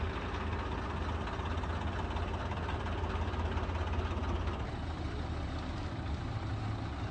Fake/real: real